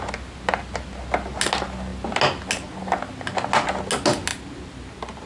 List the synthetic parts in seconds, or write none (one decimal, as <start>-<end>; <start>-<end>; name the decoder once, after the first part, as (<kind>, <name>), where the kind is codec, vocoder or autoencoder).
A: 4.3-5.3 (vocoder, BigVGAN v2)